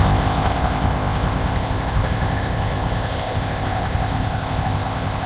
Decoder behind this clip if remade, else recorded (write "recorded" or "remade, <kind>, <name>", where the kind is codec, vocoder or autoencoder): remade, codec, ZipCodec